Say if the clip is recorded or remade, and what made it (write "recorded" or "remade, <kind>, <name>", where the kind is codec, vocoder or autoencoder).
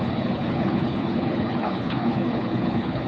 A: remade, codec, HILCodec